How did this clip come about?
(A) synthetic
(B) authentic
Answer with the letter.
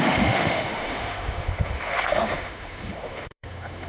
A